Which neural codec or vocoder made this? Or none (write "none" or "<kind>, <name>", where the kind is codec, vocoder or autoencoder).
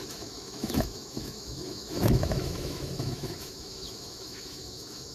autoencoder, DAC-VAE